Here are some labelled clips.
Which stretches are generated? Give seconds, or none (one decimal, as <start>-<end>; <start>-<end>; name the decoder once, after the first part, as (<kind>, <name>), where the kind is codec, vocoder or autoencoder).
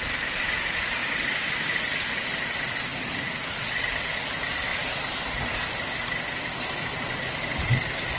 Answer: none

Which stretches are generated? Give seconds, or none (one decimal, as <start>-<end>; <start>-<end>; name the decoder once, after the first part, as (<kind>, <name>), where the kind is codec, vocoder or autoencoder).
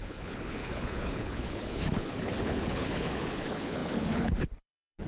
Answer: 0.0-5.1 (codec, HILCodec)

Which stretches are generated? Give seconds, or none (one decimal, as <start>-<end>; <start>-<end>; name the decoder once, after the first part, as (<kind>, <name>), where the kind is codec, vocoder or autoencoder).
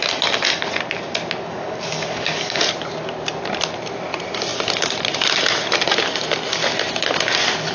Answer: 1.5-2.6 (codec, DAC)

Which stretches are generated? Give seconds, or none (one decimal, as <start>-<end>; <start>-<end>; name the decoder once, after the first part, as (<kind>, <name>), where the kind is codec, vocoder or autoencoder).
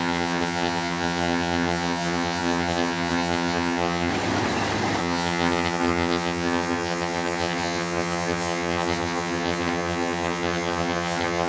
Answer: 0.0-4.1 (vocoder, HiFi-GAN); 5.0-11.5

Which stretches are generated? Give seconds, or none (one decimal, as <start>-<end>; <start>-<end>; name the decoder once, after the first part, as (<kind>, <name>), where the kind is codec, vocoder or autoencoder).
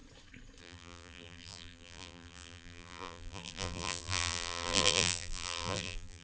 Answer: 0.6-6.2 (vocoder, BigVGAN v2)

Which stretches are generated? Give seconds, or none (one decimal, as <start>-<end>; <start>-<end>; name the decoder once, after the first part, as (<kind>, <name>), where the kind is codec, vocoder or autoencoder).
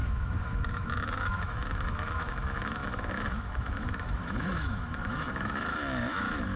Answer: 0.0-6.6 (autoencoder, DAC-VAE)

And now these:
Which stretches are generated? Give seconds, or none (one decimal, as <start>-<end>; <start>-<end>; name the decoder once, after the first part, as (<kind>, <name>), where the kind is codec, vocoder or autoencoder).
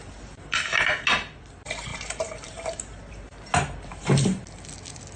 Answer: 1.9-2.8 (vocoder, BigVGAN v2); 3.9-4.4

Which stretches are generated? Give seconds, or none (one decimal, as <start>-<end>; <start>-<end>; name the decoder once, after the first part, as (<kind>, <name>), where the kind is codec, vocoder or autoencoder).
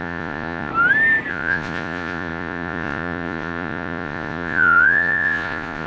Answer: 0.0-0.7 (vocoder, Vocos); 1.3-5.9